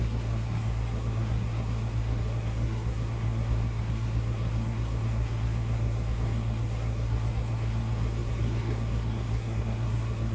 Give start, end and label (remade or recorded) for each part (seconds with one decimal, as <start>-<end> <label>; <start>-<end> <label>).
0.0-10.3 remade